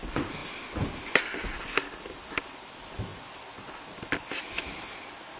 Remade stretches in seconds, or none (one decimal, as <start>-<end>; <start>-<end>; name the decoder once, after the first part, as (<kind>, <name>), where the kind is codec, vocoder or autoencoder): none

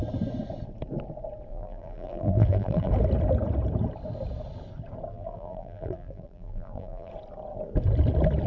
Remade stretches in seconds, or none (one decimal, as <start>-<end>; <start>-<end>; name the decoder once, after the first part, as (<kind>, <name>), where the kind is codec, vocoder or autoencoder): 1.5-2.9 (vocoder, BigVGAN v2); 5.1-7.1

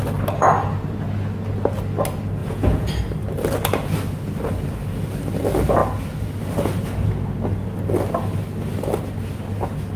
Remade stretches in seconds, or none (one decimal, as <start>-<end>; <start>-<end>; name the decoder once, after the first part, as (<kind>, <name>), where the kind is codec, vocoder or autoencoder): 2.4-2.9 (vocoder, Vocos)

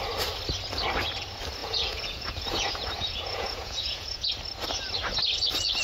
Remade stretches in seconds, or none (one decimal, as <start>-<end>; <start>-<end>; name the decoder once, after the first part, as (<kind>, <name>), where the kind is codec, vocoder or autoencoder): 1.6-4.3 (vocoder, Vocos)

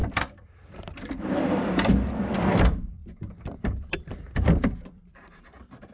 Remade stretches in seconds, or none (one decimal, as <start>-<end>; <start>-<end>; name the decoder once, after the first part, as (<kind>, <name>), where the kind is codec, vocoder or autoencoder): 0.0-5.9 (vocoder, BigVGAN v2)

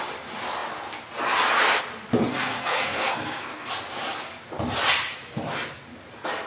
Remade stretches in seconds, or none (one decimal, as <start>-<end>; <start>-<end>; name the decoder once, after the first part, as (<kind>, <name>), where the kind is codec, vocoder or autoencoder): 2.3-3.7 (codec, SNAC)